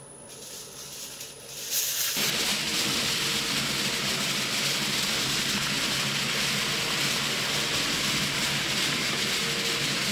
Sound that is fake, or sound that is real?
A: real